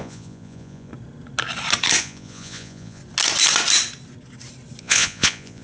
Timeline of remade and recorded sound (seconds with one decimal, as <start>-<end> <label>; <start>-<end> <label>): 0.0-0.9 remade; 0.9-2.0 recorded; 2.0-3.0 remade; 3.0-4.8 recorded; 4.8-5.6 remade